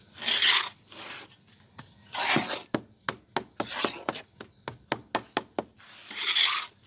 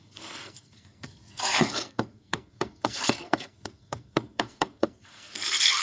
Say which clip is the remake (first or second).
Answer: second